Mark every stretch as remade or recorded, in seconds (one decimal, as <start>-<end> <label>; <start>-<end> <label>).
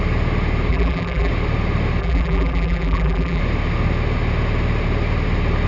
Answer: 0.0-0.7 recorded; 0.7-1.3 remade; 1.3-2.0 recorded; 2.0-3.4 remade; 3.4-5.7 recorded